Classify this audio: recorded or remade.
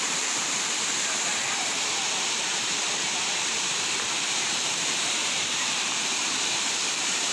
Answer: remade